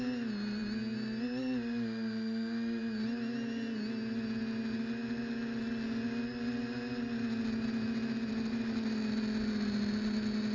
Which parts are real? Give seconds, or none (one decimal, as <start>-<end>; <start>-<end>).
0.0-8.3; 9.4-10.5